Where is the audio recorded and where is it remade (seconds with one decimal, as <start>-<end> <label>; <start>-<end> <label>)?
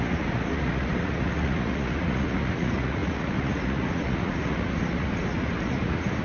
0.0-6.2 remade